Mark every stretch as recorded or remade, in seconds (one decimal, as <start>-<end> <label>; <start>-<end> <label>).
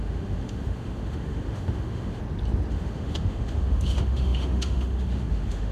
0.0-2.2 remade; 2.2-2.7 recorded; 2.7-5.7 remade